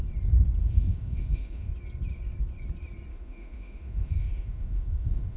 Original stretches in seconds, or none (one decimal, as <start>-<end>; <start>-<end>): 0.0-0.6; 1.7-3.1